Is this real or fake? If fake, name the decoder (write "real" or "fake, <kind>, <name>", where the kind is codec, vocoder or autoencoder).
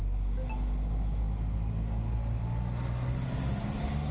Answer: real